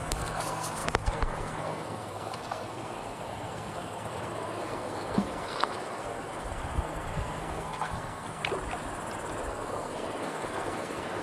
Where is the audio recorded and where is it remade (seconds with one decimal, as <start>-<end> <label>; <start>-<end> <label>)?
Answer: 0.0-8.4 remade; 8.4-9.5 recorded; 9.5-11.2 remade